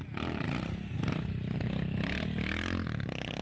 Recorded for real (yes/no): yes